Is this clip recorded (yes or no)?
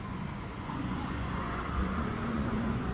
no